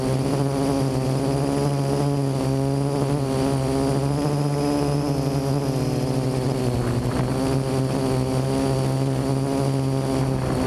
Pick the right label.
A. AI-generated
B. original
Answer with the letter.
B